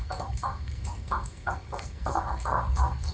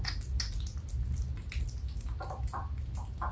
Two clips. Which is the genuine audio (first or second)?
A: second